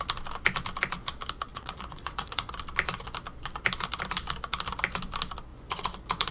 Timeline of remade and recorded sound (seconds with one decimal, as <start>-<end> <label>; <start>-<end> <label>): 0.0-1.5 recorded; 1.5-2.5 remade; 2.5-5.5 recorded; 5.5-6.3 remade